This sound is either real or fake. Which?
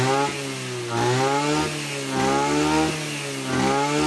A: real